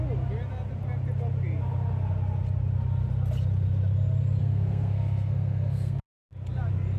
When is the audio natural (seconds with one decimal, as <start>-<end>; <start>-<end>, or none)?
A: 0.0-4.4; 6.3-7.0